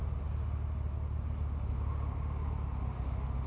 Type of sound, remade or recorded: recorded